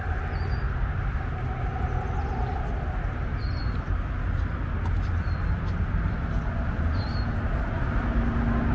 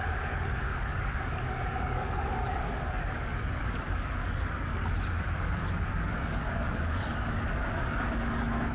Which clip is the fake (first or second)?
second